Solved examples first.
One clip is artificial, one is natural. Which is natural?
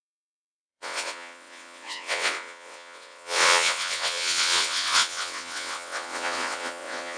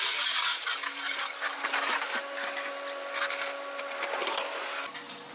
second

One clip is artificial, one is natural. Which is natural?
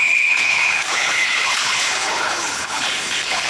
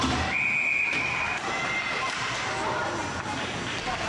second